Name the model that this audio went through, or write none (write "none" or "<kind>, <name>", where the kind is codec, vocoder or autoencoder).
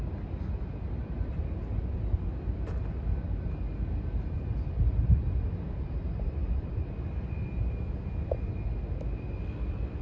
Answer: none